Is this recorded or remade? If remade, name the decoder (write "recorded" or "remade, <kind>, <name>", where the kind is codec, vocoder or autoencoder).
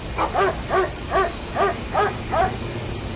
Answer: recorded